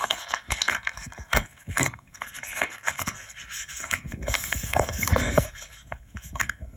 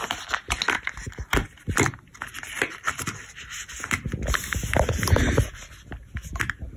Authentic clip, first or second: second